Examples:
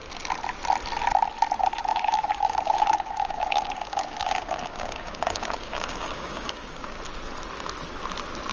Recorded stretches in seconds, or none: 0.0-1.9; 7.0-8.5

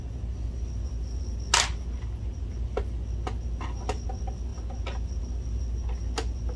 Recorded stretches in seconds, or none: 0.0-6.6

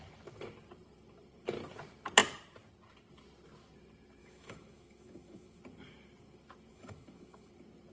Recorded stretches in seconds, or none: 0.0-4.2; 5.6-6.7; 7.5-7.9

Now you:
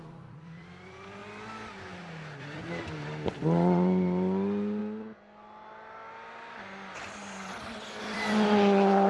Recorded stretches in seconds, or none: 1.2-2.4; 4.8-8.0